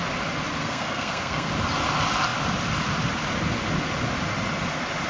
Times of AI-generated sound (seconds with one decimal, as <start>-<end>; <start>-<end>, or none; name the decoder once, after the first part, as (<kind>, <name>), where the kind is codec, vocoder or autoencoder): 0.6-1.5 (codec, SNAC)